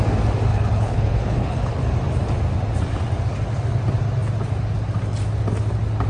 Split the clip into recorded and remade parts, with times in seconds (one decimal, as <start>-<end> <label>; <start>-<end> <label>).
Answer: 0.0-0.5 recorded; 0.5-1.8 remade; 1.8-6.1 recorded